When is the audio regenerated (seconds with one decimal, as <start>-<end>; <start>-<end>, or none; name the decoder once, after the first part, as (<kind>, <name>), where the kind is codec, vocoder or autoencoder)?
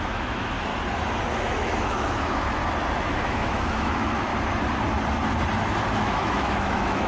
0.0-0.7 (autoencoder, DAC-VAE); 1.3-2.6; 3.2-4.3; 6.0-7.1